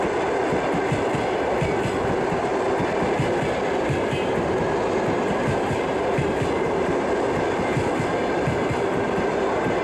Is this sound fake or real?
real